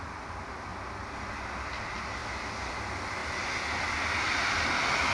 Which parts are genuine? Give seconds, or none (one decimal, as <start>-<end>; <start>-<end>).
0.0-5.1

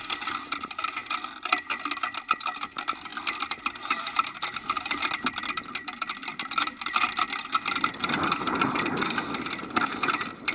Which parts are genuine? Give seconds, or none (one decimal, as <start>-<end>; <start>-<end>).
0.0-1.0; 1.7-3.1; 4.7-6.2; 9.0-10.5

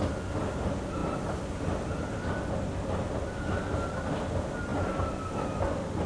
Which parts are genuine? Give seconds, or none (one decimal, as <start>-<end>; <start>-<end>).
0.0-6.1

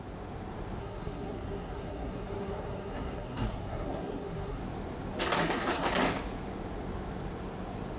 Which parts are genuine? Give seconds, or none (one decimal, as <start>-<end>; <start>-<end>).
0.0-0.8; 4.6-5.4; 5.9-8.0